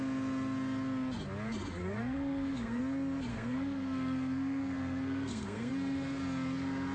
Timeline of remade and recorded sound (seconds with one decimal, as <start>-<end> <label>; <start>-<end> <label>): 0.0-1.8 recorded; 1.8-2.8 remade; 2.8-3.3 recorded; 3.3-5.7 remade; 5.7-6.9 recorded